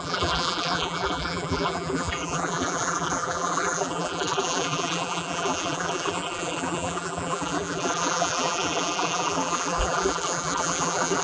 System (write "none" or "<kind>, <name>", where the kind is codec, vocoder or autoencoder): vocoder, BigVGAN v2